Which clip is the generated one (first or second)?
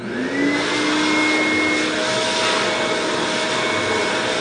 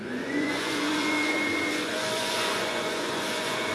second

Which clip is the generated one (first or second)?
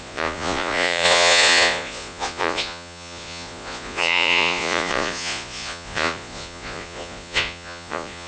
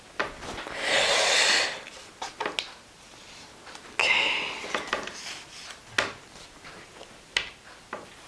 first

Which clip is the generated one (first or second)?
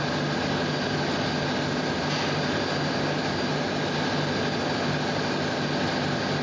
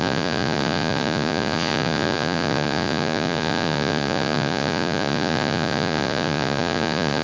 second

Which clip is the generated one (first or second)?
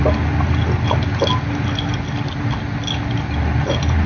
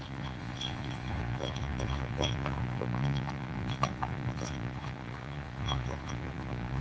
second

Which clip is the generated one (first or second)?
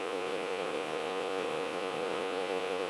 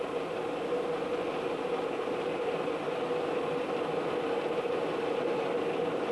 first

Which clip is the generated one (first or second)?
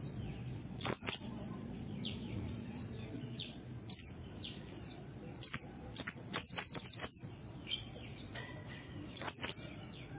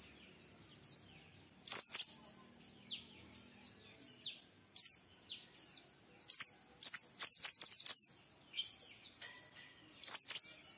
first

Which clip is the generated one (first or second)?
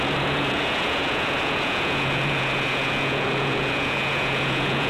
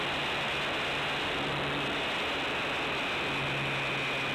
first